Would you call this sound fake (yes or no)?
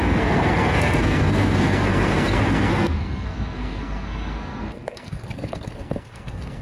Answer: yes